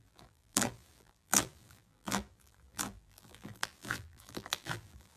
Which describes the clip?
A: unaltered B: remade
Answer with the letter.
B